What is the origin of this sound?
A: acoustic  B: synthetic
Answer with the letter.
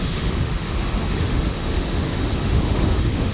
B